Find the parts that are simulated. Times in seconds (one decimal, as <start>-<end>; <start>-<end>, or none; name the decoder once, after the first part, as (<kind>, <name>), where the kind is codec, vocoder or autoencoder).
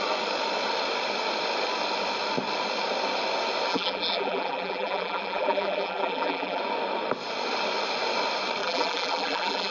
3.7-6.6 (vocoder, BigVGAN v2); 8.6-9.7